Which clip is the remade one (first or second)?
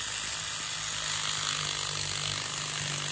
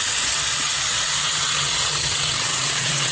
second